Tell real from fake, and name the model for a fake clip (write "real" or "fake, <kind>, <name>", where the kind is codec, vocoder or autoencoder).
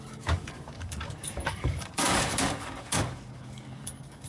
fake, codec, DAC